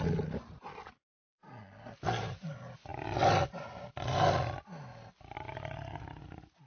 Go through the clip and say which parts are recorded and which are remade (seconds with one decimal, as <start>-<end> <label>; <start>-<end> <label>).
0.0-6.7 recorded